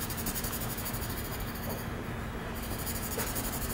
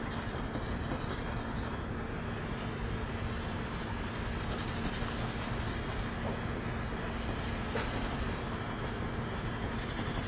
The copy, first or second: first